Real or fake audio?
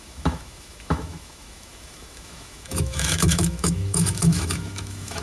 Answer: fake